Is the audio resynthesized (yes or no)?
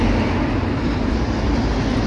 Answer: no